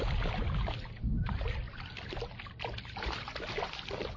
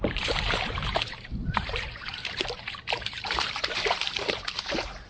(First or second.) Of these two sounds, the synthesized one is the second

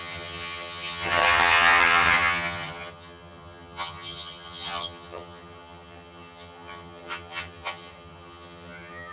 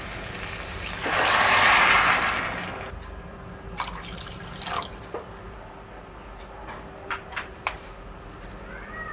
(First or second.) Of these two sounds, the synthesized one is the first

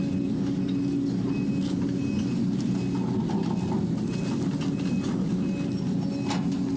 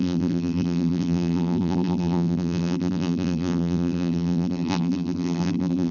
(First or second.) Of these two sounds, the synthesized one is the second